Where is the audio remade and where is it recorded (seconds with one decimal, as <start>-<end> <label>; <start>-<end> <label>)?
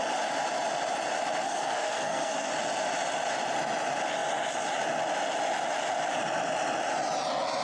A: 0.0-1.4 recorded; 1.4-2.5 remade; 2.5-7.6 recorded